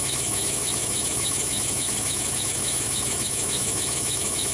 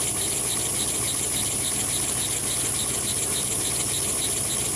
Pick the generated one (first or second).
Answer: first